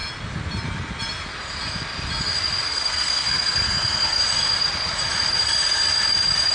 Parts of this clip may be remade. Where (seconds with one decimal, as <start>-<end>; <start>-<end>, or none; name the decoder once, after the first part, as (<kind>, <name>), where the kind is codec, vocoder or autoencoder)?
2.7-4.2 (codec, SNAC)